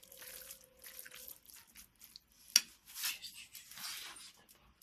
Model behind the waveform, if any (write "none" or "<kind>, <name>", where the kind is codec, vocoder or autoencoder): none